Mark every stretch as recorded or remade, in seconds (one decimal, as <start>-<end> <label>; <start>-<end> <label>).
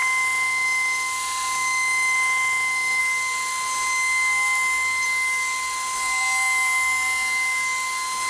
0.0-3.0 remade; 3.0-8.3 recorded